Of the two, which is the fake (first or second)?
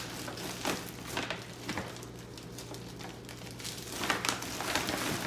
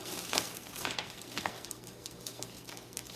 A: second